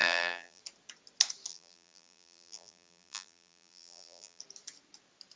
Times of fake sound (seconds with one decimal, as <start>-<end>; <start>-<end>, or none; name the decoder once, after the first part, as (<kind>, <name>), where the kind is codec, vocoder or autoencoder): 0.0-0.6 (vocoder, BigVGAN v2); 1.5-4.4